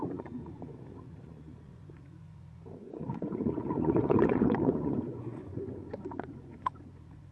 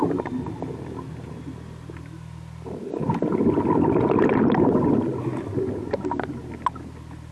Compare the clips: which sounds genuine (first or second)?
second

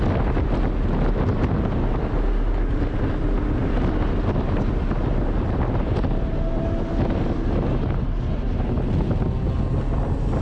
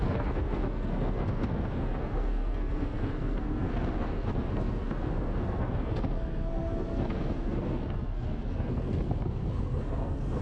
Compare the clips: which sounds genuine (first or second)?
first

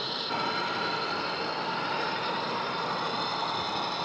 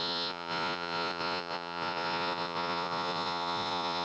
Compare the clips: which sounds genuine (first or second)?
first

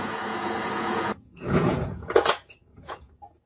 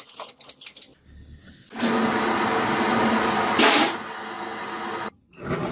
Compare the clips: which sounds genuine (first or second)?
second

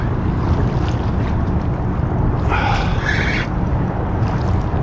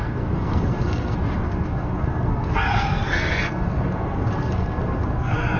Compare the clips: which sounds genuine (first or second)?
first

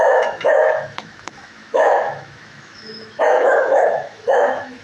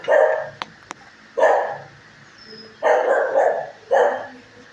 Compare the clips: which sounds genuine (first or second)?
second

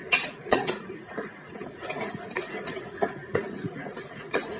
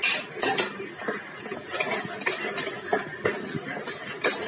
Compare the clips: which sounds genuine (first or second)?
second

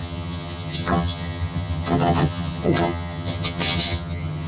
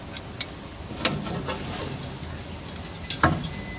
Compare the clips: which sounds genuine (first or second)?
second